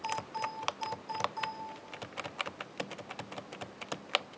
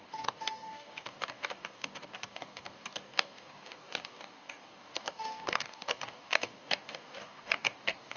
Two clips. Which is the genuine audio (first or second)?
first